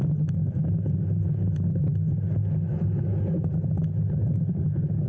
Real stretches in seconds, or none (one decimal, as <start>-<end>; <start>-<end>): 0.0-5.1